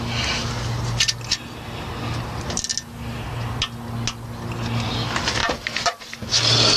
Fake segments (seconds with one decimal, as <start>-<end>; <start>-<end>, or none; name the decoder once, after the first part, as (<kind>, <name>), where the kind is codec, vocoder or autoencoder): 5.4-6.0 (vocoder, BigVGAN v2)